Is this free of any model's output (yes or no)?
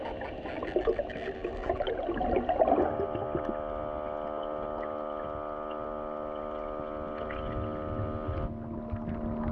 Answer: yes